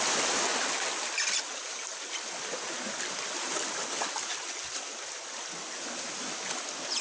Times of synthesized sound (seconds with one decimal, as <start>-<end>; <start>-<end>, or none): none